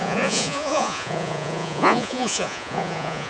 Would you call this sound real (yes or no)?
no